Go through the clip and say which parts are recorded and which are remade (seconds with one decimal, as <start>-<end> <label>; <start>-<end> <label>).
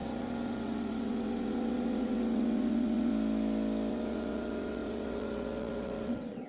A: 0.0-3.1 remade; 3.1-3.9 recorded; 3.9-6.5 remade